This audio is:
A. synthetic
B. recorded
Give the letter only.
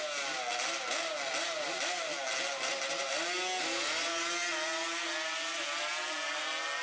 B